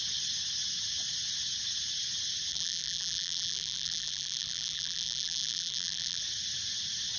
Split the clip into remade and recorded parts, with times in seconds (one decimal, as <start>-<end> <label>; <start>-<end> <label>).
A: 0.0-2.5 recorded; 2.5-6.2 remade; 6.2-7.2 recorded